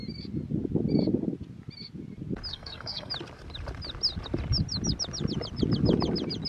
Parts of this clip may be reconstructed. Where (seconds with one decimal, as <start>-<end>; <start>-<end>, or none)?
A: 2.5-3.1